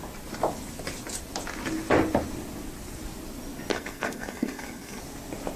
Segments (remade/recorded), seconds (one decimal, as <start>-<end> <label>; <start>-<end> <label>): 0.0-3.7 recorded; 3.7-5.0 remade; 5.0-5.6 recorded